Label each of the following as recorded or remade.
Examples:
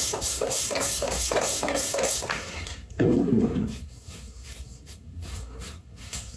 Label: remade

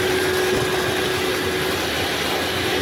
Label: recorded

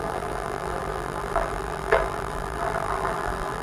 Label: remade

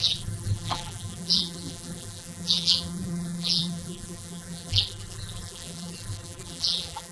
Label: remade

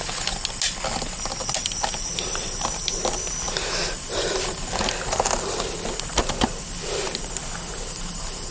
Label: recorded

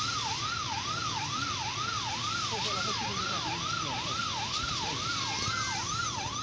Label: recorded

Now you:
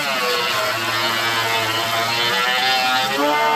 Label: recorded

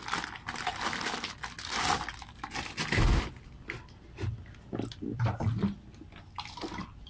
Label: recorded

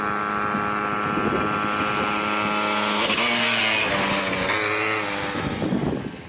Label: recorded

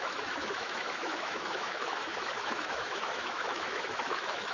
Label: remade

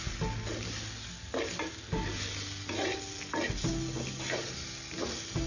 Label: recorded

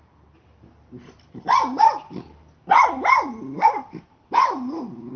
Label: recorded